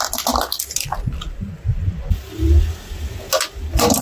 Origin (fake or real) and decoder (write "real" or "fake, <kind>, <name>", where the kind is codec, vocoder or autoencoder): real